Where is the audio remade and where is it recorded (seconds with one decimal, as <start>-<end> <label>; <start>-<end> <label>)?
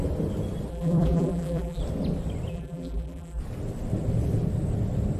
0.0-0.7 recorded; 0.7-1.8 remade; 1.8-2.5 recorded; 2.5-3.4 remade; 3.4-5.2 recorded